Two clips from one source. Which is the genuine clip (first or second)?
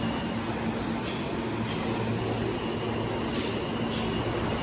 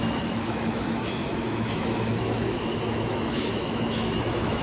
first